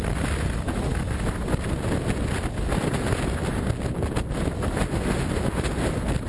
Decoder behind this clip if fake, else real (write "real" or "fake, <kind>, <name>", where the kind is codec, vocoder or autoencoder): real